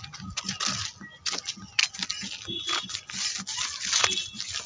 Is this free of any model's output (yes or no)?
yes